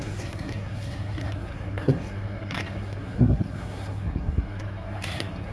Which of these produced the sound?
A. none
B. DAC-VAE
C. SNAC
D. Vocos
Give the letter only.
C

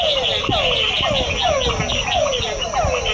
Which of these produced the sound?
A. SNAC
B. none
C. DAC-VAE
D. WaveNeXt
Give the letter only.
B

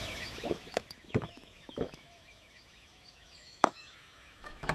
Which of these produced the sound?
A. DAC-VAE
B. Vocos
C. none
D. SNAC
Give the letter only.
A